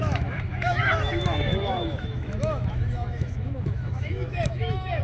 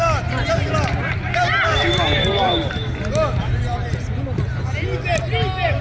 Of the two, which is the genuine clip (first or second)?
second